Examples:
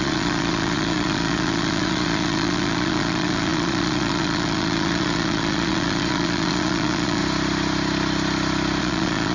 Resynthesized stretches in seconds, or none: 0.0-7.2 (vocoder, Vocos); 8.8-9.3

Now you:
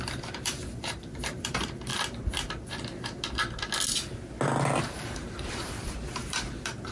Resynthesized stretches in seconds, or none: 0.0-1.9 (vocoder, BigVGAN v2); 4.8-6.9